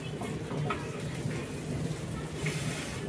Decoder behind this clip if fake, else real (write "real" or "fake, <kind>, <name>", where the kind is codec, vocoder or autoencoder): real